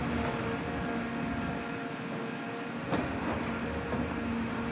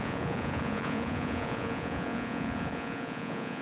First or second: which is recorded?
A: first